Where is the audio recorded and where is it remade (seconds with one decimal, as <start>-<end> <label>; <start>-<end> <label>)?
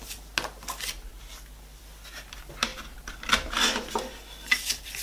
0.0-5.0 recorded